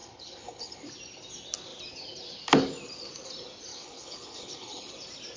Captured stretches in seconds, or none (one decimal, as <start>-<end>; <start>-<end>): 0.8-3.7; 4.9-5.4